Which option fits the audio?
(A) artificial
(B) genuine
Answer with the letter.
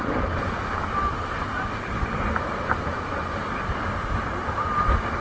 B